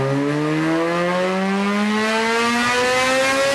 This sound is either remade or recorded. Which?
recorded